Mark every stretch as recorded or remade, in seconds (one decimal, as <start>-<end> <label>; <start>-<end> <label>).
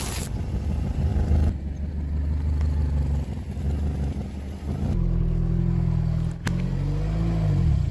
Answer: 0.0-7.9 recorded